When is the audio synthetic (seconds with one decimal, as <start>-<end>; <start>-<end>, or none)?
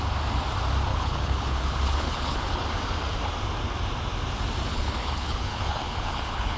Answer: 0.9-2.6; 4.7-6.6